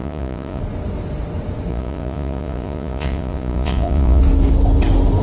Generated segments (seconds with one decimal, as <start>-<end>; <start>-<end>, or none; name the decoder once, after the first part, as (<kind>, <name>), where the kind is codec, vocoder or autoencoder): 0.0-0.6 (vocoder, Vocos); 1.7-4.2